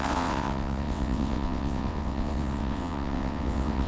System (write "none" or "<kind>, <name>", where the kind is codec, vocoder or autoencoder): vocoder, WaveNeXt